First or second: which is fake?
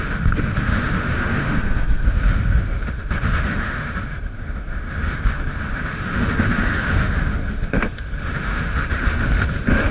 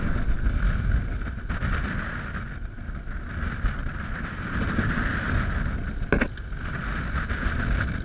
first